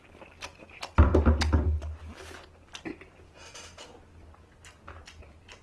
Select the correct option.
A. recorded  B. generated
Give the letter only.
A